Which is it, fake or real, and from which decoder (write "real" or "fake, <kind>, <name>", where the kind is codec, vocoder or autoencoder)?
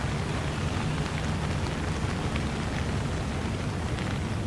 real